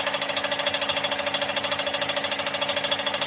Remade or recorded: recorded